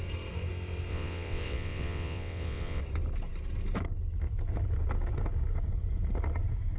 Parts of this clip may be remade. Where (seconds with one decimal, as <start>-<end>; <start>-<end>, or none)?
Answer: 0.9-2.8